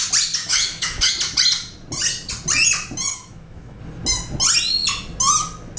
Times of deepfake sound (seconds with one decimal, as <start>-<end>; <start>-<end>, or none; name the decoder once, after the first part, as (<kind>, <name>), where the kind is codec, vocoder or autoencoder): 0.4-1.1 (autoencoder, DAC-VAE); 3.1-3.8